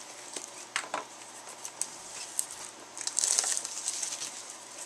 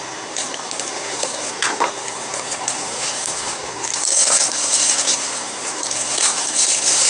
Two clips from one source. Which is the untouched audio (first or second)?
first